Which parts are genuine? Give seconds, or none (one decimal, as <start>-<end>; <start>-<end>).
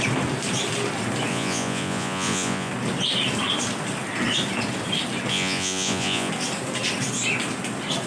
0.0-1.3; 2.7-5.3; 6.3-8.1